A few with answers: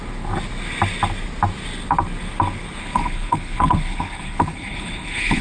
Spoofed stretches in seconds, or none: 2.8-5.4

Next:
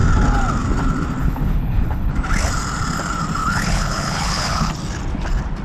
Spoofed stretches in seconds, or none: 1.2-2.1; 3.4-4.7